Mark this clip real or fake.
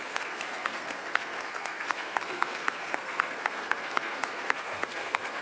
fake